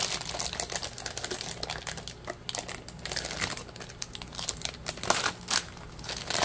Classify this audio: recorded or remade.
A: recorded